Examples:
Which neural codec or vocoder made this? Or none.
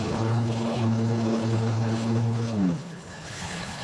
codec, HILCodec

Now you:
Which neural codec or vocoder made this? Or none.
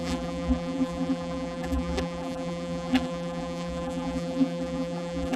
vocoder, BigVGAN v2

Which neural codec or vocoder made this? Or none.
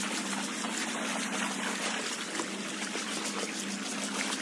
none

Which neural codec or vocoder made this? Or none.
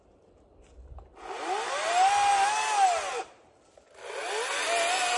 none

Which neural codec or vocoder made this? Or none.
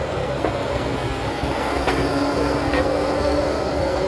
codec, SNAC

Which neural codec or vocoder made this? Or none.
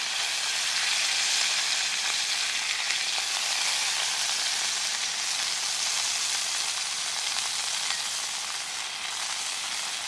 none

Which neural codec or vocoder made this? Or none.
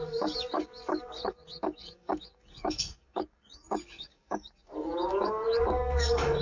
codec, DAC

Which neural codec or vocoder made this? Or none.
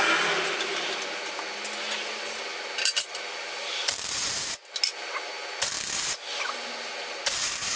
none